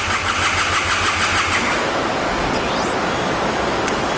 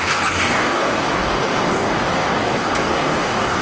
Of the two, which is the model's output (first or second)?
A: second